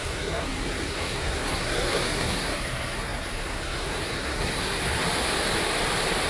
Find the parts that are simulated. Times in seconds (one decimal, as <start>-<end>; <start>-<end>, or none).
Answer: 0.0-4.8